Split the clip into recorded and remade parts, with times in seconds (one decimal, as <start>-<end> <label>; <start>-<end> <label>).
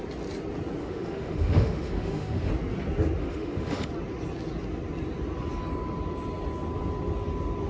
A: 0.0-0.8 recorded; 0.8-2.5 remade; 2.5-3.2 recorded; 3.2-3.9 remade; 3.9-7.7 recorded